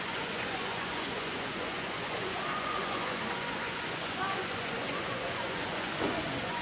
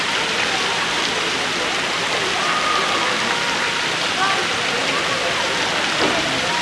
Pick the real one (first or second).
second